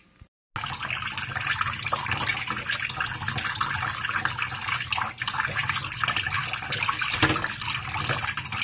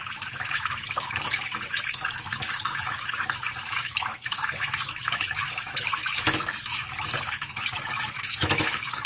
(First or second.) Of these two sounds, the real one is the first